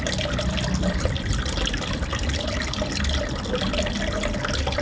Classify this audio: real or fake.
real